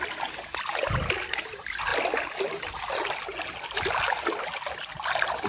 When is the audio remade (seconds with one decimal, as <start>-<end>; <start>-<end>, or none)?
none

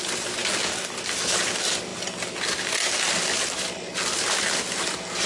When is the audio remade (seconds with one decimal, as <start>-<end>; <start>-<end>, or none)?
none

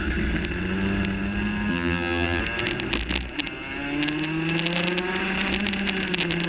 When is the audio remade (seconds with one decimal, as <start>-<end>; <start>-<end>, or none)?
1.7-2.4

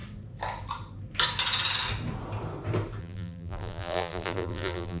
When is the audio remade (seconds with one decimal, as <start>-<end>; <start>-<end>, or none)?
3.0-5.0

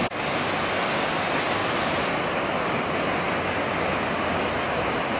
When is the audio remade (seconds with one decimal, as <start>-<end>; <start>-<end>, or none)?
1.6-3.9

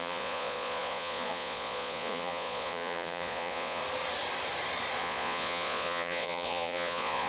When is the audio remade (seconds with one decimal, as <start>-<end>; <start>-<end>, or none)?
0.0-3.8; 5.0-7.3

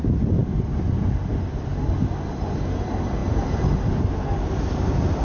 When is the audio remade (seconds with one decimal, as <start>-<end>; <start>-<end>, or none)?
none

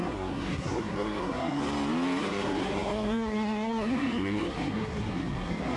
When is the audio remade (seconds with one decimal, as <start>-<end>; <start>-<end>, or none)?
0.0-1.6; 2.2-5.8